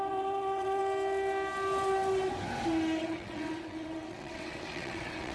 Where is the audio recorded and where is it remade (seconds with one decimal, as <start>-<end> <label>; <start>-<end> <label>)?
0.0-0.8 remade; 0.8-3.0 recorded; 3.0-5.3 remade